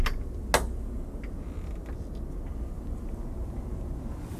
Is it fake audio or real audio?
real